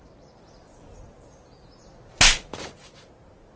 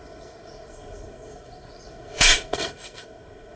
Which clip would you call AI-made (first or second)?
second